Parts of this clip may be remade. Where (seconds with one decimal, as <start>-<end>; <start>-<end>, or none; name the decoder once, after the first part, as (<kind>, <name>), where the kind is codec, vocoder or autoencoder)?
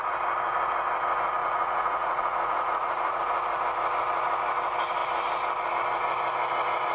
1.4-3.2 (vocoder, Vocos)